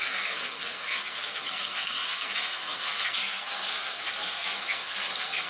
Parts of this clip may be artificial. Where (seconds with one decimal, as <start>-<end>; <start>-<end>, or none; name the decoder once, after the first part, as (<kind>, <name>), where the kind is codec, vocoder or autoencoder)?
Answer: 0.0-5.5 (codec, SNAC)